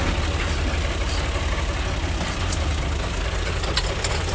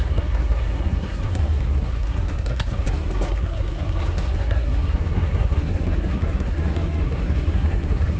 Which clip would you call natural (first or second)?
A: first